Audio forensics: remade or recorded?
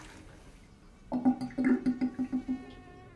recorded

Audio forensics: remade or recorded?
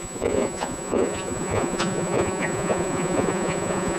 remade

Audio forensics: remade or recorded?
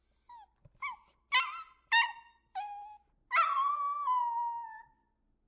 recorded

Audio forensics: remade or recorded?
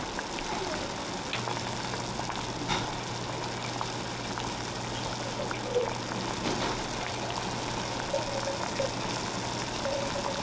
recorded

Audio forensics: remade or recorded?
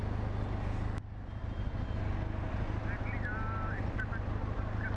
recorded